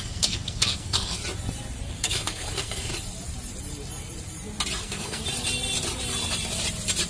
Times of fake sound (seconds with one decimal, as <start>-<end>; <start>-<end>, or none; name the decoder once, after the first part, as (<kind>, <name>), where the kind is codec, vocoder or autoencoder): 0.0-1.2 (codec, SNAC); 1.9-2.9; 4.8-5.2